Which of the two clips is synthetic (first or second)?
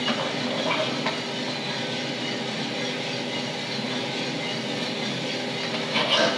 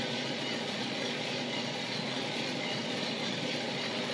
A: second